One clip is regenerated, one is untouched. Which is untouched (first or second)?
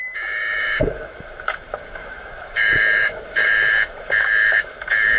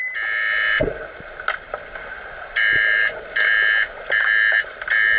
second